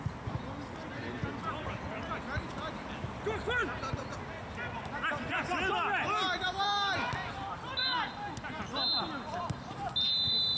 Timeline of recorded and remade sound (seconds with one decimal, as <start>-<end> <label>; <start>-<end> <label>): 0.0-3.6 recorded; 3.6-7.1 remade; 7.1-10.6 recorded